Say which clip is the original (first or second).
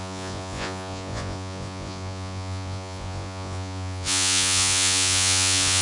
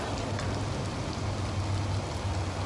second